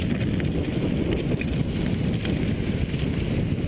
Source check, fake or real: real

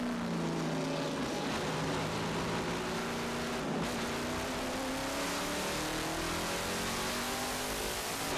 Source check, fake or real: real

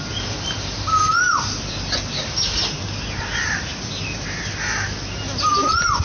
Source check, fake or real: real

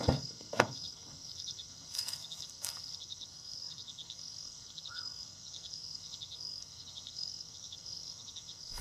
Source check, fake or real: fake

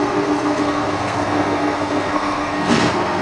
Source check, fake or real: fake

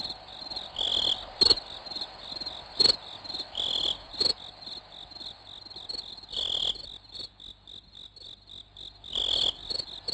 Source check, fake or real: real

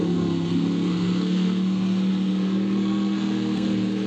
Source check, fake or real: fake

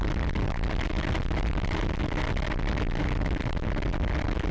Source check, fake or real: real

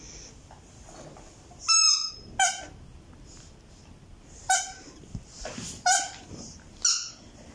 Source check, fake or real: real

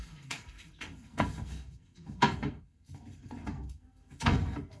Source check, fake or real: fake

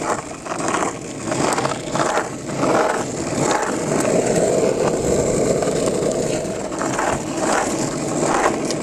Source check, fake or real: real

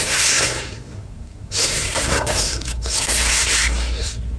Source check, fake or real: fake